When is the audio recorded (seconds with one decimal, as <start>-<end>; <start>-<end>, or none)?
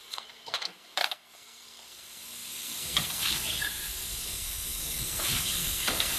none